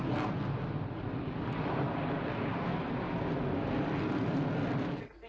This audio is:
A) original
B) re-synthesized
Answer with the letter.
A